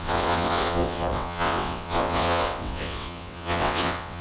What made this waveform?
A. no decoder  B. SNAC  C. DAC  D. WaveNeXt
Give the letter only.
D